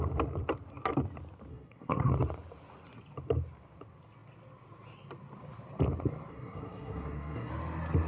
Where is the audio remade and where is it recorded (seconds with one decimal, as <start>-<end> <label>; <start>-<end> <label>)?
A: 0.0-1.5 recorded; 1.5-2.1 remade; 2.1-6.3 recorded; 6.3-7.5 remade; 7.5-8.1 recorded